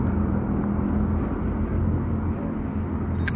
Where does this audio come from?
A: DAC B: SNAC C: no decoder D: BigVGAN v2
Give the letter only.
C